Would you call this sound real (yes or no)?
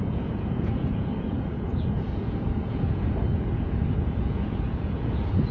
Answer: no